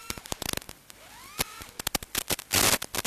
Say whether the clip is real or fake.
real